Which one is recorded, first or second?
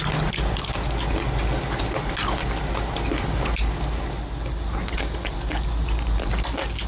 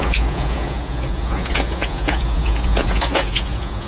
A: first